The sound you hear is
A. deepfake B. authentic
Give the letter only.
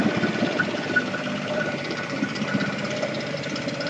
A